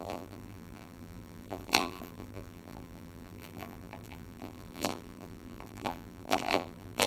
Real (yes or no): no